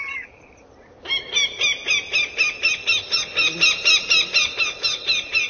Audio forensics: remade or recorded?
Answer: recorded